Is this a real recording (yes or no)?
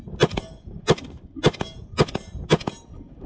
yes